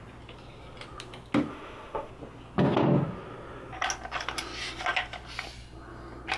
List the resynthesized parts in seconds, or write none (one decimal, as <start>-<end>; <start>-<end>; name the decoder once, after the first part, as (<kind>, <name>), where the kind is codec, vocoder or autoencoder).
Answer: 1.5-2.1 (autoencoder, DAC-VAE)

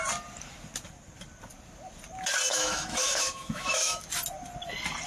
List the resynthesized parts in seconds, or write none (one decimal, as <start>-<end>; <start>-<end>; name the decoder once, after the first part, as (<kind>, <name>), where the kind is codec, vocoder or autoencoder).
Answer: 2.5-4.0 (autoencoder, DAC-VAE)